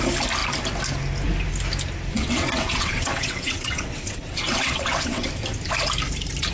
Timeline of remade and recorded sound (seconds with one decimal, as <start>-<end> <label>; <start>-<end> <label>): 0.0-2.1 recorded; 2.1-5.3 remade; 5.3-6.5 recorded